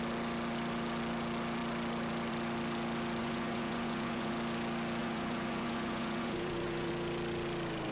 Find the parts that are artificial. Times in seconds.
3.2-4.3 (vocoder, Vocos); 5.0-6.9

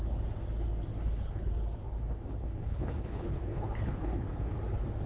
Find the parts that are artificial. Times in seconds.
0.9-1.5 (codec, HILCodec); 2.4-4.4

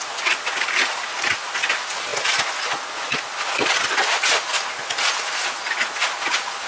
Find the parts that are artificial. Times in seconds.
none

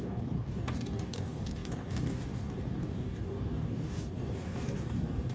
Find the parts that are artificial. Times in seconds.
0.0-5.3 (codec, DAC)